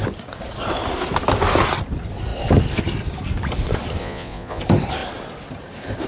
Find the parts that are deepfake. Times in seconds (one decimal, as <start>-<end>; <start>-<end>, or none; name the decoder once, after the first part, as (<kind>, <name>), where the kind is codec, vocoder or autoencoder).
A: 4.0-4.6 (vocoder, Vocos)